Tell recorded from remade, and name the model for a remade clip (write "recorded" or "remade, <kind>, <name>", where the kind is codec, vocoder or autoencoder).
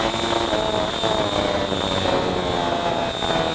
recorded